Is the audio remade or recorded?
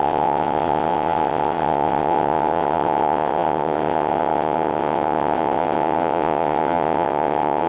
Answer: remade